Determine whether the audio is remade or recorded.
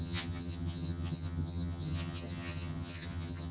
remade